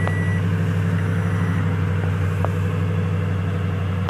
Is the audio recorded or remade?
recorded